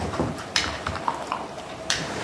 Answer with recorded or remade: remade